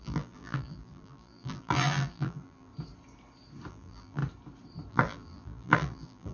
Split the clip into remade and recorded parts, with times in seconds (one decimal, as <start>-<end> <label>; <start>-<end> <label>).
0.0-2.7 remade; 2.7-3.7 recorded; 3.7-4.2 remade; 4.2-4.9 recorded; 4.9-6.3 remade